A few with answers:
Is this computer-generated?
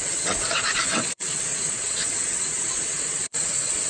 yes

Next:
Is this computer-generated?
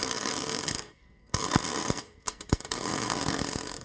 yes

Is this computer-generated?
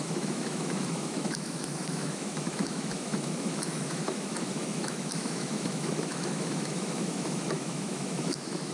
yes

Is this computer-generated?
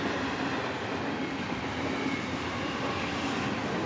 no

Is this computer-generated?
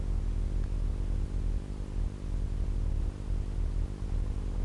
no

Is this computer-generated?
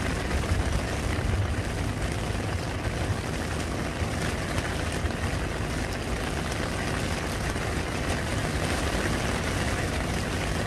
no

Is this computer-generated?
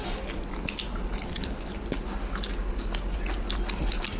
no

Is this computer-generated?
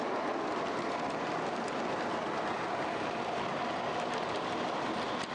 no